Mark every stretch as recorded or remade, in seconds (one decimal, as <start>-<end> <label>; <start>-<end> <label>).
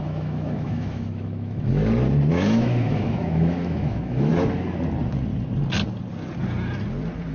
0.0-1.8 remade; 1.8-2.3 recorded; 2.3-4.3 remade; 4.3-7.3 recorded